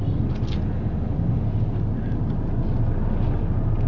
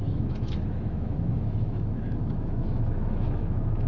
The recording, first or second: first